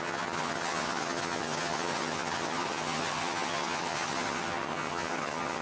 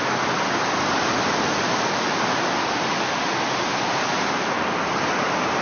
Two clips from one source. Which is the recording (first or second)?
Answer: second